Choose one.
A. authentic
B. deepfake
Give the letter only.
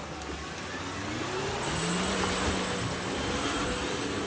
A